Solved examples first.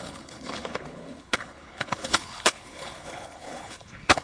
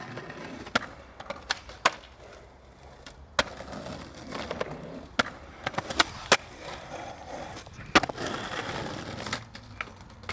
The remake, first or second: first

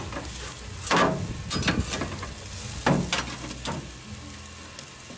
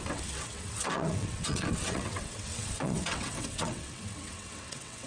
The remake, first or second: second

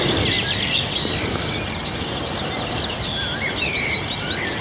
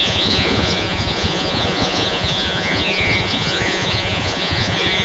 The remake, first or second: second